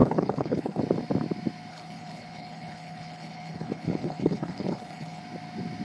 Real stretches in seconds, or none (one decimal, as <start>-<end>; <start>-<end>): 0.8-1.7; 5.2-5.8